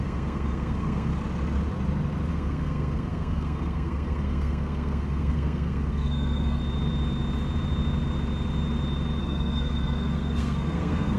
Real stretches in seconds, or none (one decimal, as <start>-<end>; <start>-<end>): 1.1-2.3; 6.6-9.2